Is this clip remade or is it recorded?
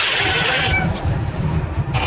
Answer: recorded